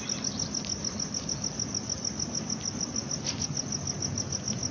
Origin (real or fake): real